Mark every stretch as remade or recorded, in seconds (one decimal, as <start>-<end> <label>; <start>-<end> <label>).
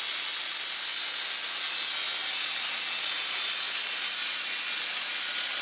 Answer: 0.0-5.6 recorded